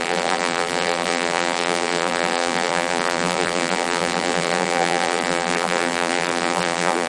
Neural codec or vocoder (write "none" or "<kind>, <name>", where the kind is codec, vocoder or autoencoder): vocoder, BigVGAN v2